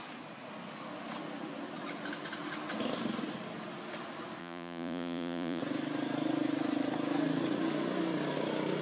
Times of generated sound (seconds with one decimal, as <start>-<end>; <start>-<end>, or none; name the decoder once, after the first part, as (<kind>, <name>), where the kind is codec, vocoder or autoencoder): 4.4-5.6 (vocoder, Vocos)